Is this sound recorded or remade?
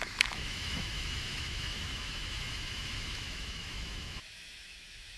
remade